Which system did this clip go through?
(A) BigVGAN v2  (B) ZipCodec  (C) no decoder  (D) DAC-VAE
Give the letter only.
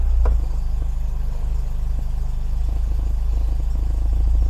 C